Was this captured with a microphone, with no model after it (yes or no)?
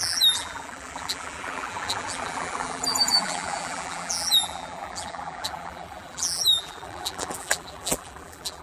no